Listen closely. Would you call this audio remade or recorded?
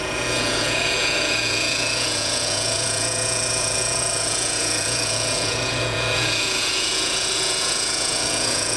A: remade